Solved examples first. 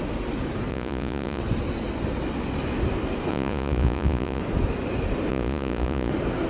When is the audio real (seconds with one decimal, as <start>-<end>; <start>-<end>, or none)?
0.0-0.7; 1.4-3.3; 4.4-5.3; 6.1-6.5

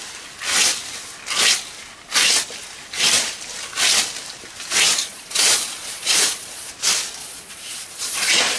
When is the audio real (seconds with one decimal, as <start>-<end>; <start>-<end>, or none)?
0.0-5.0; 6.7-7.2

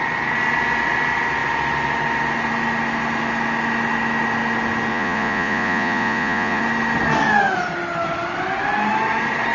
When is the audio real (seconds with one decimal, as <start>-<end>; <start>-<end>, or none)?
0.0-4.9; 6.6-9.5

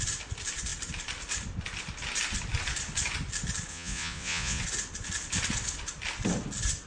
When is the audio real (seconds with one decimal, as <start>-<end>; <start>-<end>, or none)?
0.0-3.7; 4.6-6.9